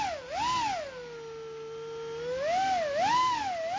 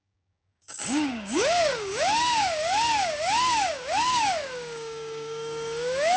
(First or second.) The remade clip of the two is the second